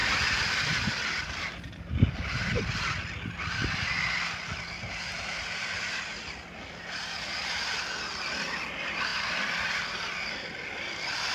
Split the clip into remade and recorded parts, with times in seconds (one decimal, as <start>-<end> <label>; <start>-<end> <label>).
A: 0.0-1.4 remade; 1.4-11.3 recorded